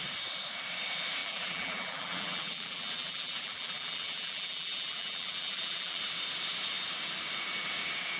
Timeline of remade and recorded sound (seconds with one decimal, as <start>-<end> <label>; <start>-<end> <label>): 0.0-1.2 recorded; 1.2-6.0 remade; 6.0-8.2 recorded